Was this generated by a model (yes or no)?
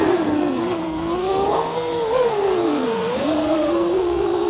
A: yes